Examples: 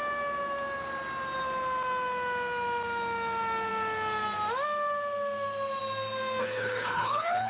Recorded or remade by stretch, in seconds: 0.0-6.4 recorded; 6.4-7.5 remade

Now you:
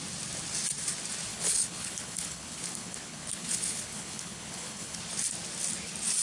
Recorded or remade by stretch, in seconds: 0.0-1.3 recorded; 1.3-5.0 remade; 5.0-6.2 recorded

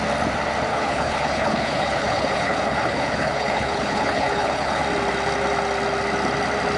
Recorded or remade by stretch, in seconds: 0.0-0.7 recorded; 0.7-4.8 remade; 4.8-6.8 recorded

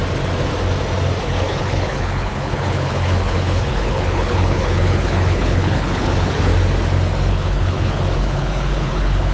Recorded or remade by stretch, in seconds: 0.0-1.2 recorded; 1.2-6.5 remade; 6.5-7.3 recorded; 7.3-9.3 remade